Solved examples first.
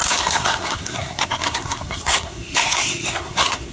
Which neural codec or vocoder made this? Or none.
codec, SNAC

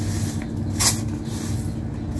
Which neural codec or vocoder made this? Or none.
none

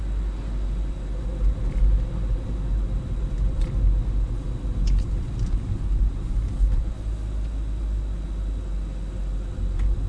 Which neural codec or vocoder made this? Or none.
none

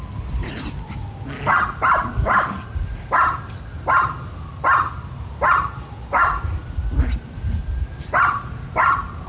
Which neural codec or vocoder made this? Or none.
none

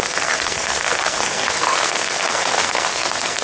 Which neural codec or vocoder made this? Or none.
codec, SNAC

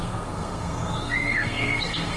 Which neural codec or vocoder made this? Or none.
codec, SNAC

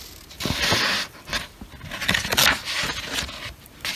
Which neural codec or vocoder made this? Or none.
none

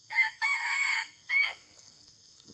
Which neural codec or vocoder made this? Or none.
codec, SNAC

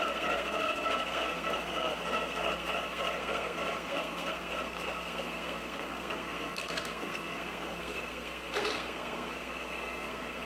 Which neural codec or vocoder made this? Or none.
codec, SNAC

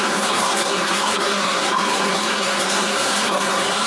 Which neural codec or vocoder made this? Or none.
codec, SNAC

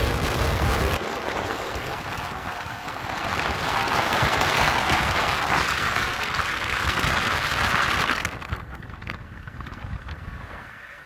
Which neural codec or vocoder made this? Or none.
codec, SNAC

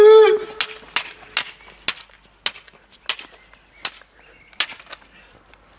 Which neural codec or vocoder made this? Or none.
none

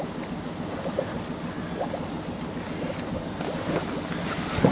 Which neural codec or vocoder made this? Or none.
none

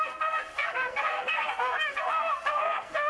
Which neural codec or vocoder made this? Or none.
codec, SNAC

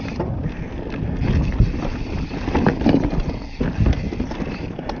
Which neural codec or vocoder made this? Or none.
none